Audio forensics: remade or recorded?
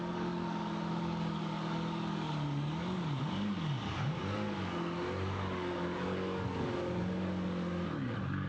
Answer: remade